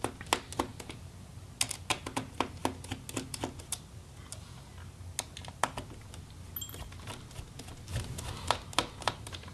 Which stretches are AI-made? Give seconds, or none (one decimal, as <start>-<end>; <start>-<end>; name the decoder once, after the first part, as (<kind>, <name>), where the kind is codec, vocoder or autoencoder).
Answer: none